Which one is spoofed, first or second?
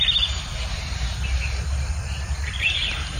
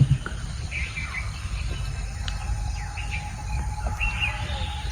first